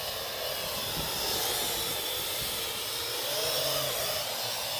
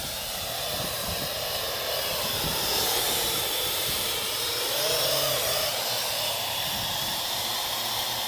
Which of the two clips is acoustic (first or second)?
first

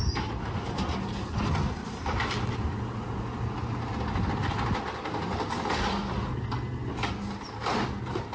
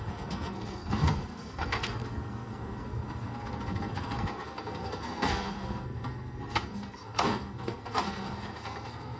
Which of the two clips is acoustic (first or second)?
first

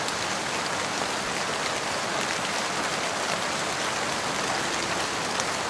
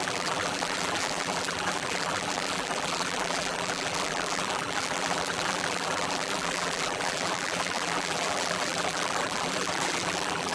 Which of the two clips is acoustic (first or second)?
first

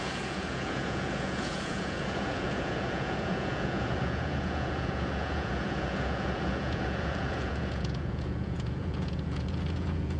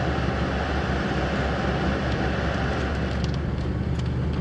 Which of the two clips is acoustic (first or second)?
second